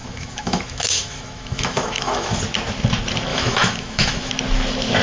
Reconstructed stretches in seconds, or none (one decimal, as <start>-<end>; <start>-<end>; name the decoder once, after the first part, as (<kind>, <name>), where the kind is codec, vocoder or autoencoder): 0.0-2.4 (autoencoder, DAC-VAE); 3.3-4.3